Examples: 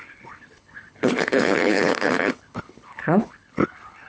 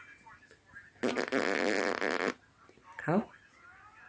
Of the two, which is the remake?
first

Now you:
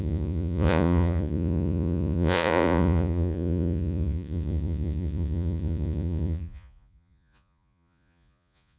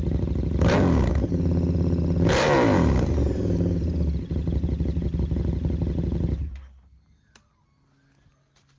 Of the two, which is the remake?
first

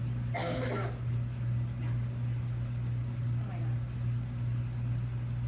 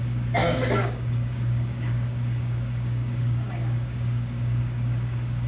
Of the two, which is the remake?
second